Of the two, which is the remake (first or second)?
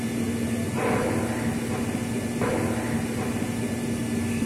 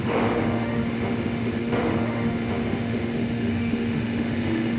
second